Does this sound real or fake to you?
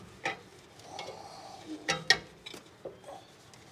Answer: real